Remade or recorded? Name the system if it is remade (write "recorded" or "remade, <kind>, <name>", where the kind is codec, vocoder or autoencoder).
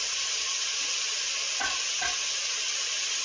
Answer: remade, vocoder, Vocos